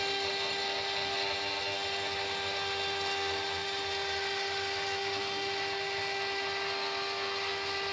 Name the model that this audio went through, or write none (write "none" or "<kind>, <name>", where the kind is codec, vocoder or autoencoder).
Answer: none